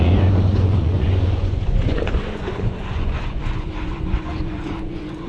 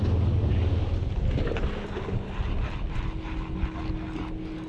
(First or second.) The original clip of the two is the second